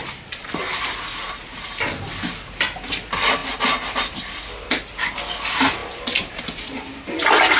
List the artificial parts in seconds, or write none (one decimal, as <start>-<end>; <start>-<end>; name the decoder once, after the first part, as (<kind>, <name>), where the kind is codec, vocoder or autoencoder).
0.0-2.1 (vocoder, BigVGAN v2); 5.8-6.3